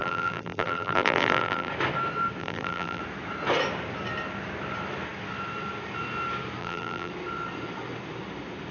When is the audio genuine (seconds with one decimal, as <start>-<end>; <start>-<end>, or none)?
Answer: 1.7-2.4; 3.0-6.6; 7.1-8.7